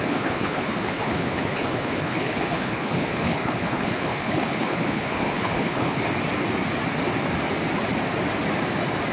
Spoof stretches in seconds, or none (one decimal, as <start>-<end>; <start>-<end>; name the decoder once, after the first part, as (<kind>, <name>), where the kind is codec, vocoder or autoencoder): 0.0-6.0 (codec, HILCodec)